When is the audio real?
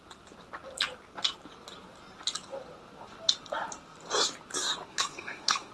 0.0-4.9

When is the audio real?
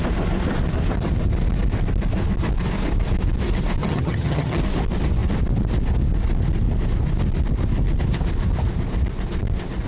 0.0-3.8; 4.6-9.9